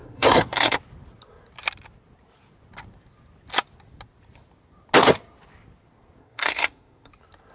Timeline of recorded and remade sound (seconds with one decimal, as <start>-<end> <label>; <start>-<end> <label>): 0.0-0.8 remade; 0.8-6.2 recorded; 6.2-7.1 remade; 7.1-7.5 recorded